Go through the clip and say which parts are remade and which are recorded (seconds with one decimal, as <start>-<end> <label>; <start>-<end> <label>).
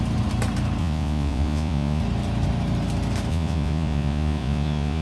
0.0-0.8 recorded; 0.8-2.0 remade; 2.0-3.3 recorded; 3.3-5.0 remade